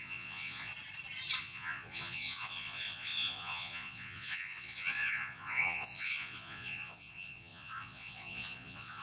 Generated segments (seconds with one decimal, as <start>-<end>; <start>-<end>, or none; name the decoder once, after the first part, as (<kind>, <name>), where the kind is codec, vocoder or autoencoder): 0.0-0.7 (vocoder, Vocos); 1.4-9.0